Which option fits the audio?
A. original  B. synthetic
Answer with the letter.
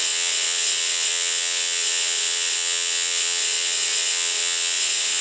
B